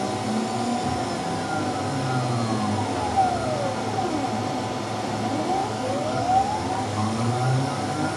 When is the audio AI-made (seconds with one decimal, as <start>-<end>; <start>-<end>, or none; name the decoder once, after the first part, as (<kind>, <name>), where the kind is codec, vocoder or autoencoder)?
5.6-8.2 (codec, DAC)